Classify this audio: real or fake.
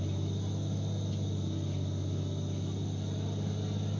real